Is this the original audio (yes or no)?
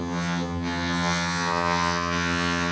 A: no